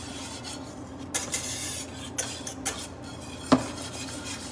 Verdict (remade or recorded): recorded